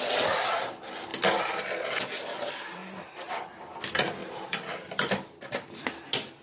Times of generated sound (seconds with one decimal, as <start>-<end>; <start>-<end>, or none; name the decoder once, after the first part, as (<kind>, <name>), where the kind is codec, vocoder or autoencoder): 4.2-5.1 (vocoder, BigVGAN v2)